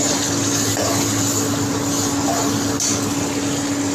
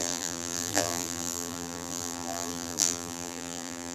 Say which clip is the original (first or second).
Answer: first